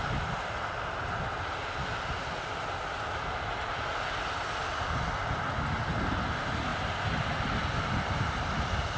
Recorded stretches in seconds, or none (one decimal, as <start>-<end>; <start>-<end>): 0.0-9.0